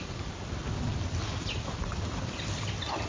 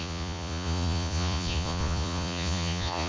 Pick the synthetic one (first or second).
second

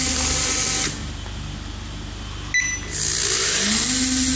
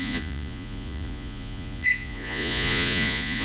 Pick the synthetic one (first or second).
second